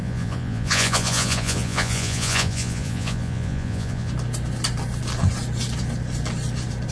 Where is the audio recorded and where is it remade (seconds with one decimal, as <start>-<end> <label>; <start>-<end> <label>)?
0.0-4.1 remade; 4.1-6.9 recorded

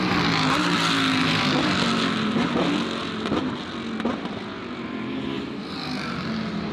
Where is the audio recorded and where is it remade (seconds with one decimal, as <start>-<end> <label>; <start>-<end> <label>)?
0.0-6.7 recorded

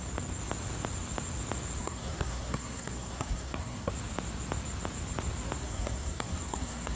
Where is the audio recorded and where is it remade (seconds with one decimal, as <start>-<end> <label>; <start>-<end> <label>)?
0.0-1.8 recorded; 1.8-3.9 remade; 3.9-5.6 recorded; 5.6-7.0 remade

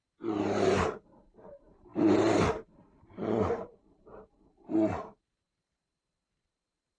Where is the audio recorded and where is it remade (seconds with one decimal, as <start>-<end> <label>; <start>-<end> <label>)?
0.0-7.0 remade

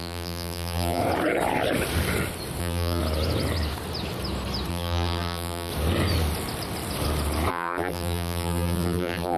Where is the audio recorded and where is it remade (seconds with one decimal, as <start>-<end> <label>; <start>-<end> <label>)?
0.0-1.0 remade; 1.0-2.6 recorded; 2.6-3.0 remade; 3.0-4.7 recorded; 4.7-5.7 remade; 5.7-7.5 recorded; 7.5-9.4 remade

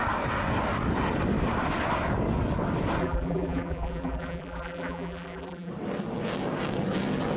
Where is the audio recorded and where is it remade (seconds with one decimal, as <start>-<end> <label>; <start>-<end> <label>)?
0.0-3.0 recorded; 3.0-5.7 remade; 5.7-7.4 recorded